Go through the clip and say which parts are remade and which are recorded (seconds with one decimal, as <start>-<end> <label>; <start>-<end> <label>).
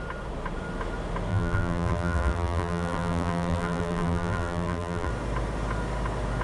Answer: 0.0-1.3 recorded; 1.3-5.1 remade; 5.1-6.4 recorded